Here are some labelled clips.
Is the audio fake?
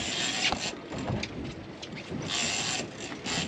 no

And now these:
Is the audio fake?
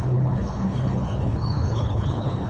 yes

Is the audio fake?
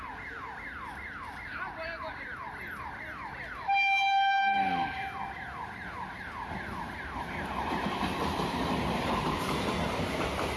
no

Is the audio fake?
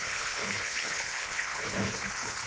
yes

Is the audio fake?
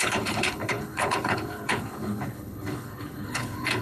yes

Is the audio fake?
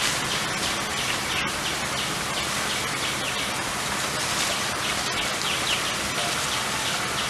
no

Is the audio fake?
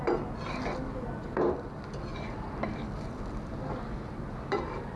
no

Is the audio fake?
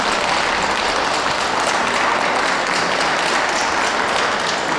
no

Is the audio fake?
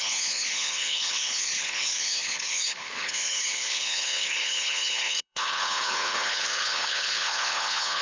yes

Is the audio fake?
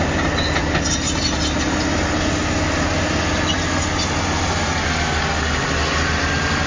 no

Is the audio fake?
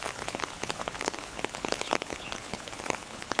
yes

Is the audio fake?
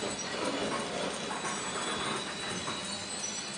no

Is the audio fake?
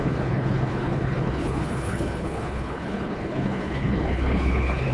yes